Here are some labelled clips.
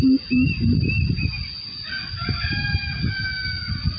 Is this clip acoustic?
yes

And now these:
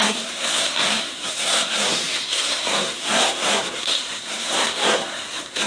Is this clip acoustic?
no